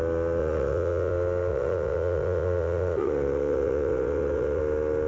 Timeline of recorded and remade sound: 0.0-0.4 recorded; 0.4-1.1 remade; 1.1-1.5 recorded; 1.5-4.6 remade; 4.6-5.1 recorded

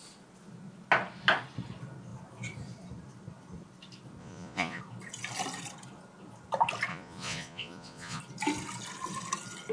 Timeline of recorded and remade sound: 0.0-4.2 recorded; 4.2-4.8 remade; 4.8-6.9 recorded; 6.9-8.2 remade; 8.2-9.7 recorded

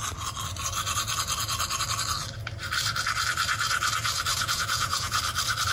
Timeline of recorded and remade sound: 0.0-4.3 recorded; 4.3-5.2 remade; 5.2-5.7 recorded

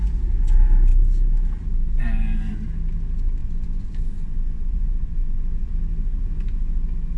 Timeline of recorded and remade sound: 0.0-3.4 recorded; 3.4-5.7 remade; 5.7-7.2 recorded

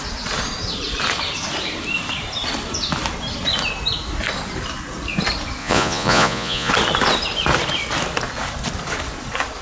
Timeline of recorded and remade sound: 0.0-5.6 recorded; 5.6-6.7 remade; 6.7-9.6 recorded

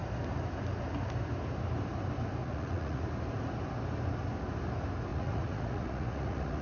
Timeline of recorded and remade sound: 0.0-2.4 recorded; 2.4-3.0 remade; 3.0-5.1 recorded; 5.1-6.6 remade

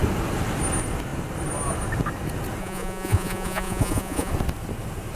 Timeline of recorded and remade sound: 0.0-2.6 recorded; 2.6-4.3 remade; 4.3-5.2 recorded

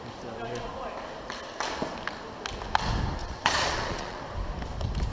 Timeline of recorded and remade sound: 0.0-3.2 recorded; 3.2-4.2 remade; 4.2-5.1 recorded